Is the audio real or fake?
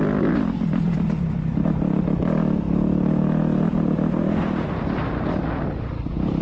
real